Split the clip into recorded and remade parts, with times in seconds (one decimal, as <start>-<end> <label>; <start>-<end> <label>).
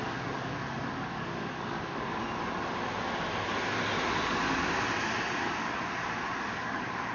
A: 0.0-2.2 remade; 2.2-6.5 recorded; 6.5-7.1 remade